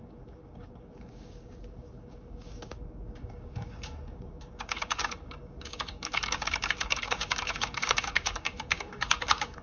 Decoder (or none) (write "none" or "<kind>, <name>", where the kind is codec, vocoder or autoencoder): codec, DAC